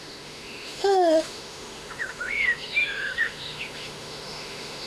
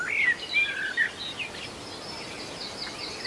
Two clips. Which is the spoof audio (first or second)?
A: first